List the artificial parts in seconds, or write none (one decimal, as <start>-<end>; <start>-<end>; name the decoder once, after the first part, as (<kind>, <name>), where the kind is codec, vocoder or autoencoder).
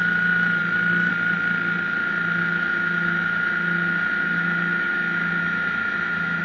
2.4-6.4 (autoencoder, DAC-VAE)